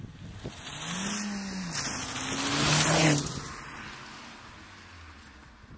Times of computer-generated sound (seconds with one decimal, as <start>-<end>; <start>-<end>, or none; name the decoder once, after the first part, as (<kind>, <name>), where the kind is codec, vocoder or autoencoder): none